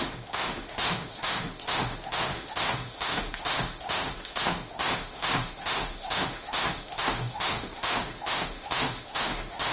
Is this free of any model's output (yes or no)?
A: no